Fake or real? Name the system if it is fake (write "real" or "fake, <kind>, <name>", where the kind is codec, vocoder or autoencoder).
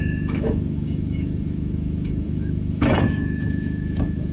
fake, autoencoder, DAC-VAE